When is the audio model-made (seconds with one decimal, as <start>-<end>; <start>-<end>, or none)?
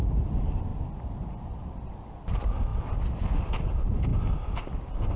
none